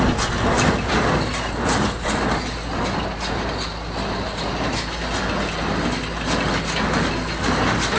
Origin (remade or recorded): recorded